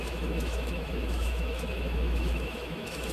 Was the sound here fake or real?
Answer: fake